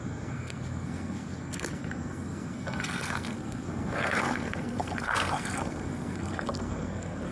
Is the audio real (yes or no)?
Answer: no